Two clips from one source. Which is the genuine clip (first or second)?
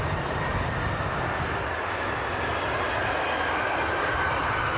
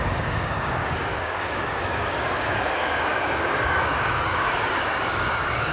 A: first